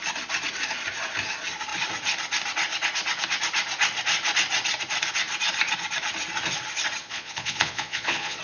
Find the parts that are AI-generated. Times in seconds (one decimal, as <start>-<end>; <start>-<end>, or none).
7.0-8.4